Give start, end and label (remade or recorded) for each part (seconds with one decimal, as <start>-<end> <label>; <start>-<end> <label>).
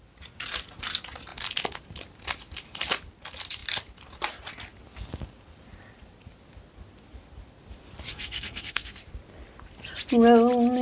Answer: 0.0-8.1 recorded; 8.1-9.0 remade; 9.0-10.8 recorded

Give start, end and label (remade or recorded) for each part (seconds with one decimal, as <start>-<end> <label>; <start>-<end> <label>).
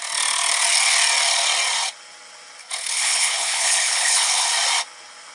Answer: 0.0-2.6 recorded; 2.6-4.4 remade; 4.4-5.3 recorded